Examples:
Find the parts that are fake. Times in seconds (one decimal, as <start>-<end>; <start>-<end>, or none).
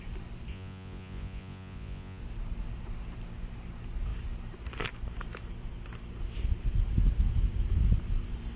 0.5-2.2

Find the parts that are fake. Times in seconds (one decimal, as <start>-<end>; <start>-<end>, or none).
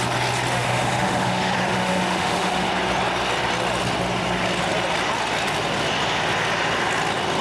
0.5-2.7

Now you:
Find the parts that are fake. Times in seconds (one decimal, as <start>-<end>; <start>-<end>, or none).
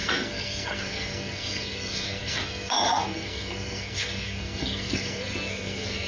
0.0-6.1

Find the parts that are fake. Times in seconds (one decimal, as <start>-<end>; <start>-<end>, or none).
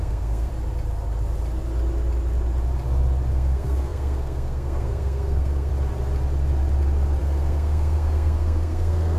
0.0-0.5; 3.3-5.7; 7.2-9.2